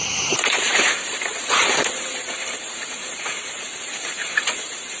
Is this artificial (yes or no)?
yes